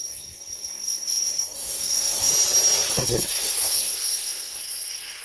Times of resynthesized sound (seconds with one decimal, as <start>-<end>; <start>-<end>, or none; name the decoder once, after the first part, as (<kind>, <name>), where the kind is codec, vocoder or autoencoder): 0.0-2.3 (codec, SNAC); 2.9-5.2